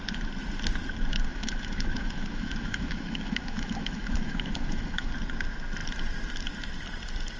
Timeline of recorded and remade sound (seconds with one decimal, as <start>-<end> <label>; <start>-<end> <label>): 0.0-1.1 recorded; 1.1-5.1 remade; 5.1-7.4 recorded